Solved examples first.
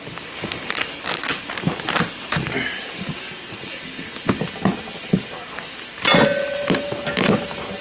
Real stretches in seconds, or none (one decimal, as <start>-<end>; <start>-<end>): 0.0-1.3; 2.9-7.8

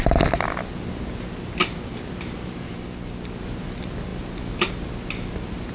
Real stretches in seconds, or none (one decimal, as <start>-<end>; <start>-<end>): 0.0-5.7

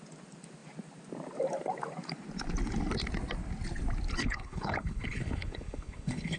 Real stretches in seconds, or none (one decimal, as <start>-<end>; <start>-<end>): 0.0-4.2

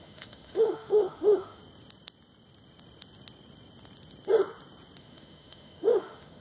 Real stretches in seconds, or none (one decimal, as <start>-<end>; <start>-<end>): 1.6-5.0